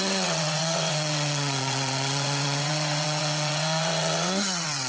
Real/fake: fake